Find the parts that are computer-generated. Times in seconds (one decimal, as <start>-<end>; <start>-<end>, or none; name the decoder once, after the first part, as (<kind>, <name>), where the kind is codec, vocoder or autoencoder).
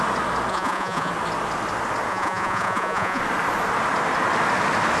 0.5-1.1 (vocoder, Vocos); 2.1-3.2